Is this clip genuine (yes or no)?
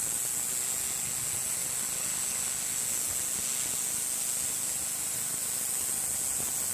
yes